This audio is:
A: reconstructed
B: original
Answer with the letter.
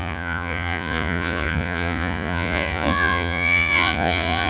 A